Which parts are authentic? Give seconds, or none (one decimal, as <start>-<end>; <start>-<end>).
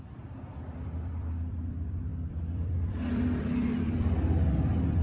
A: none